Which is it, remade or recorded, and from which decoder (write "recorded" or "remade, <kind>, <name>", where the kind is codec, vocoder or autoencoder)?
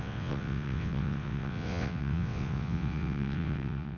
remade, vocoder, WaveNeXt